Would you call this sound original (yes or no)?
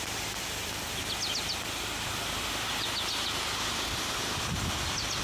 yes